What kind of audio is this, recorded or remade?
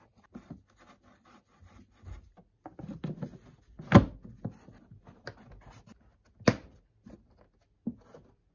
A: recorded